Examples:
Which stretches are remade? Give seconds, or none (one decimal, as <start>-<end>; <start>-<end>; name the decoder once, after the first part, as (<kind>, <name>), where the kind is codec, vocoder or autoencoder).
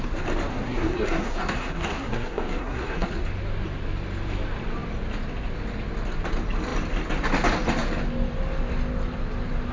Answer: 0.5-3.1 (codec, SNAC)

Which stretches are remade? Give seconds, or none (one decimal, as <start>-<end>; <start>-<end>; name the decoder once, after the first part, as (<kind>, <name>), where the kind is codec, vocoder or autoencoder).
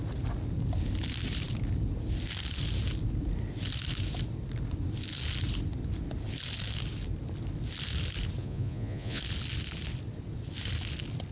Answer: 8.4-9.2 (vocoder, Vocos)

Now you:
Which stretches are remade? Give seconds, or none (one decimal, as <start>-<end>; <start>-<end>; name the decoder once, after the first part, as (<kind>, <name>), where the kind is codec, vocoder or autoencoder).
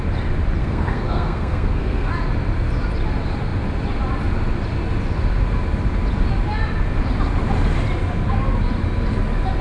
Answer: 0.6-2.1 (codec, SNAC)